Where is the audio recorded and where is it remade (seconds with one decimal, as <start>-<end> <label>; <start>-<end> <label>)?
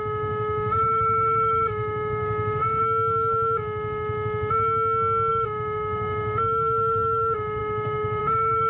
0.0-2.6 remade; 2.6-5.3 recorded; 5.3-8.7 remade